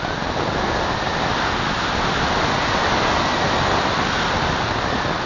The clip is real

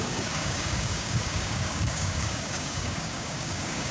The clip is fake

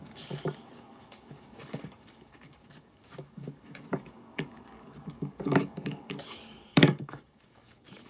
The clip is fake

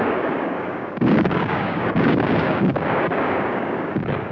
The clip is fake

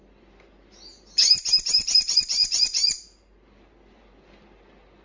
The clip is real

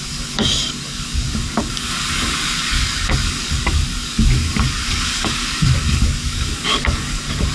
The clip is fake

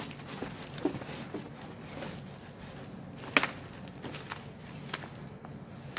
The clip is real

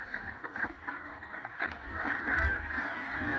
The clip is fake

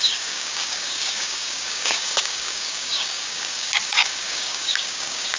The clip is fake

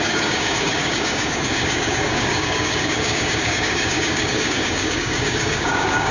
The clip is fake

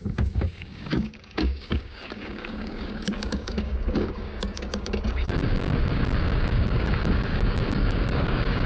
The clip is fake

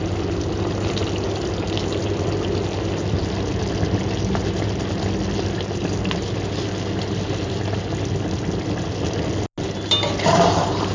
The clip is real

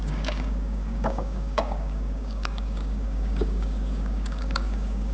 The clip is fake